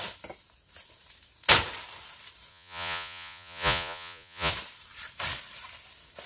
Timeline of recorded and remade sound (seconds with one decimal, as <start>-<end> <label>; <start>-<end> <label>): 0.0-2.5 recorded; 2.5-4.5 remade; 4.5-6.3 recorded